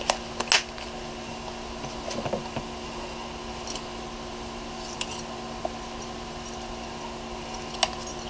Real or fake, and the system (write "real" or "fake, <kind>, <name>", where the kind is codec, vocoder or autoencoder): real